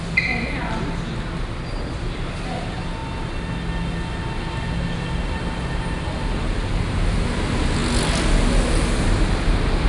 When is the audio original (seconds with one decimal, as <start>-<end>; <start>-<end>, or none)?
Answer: 0.0-9.9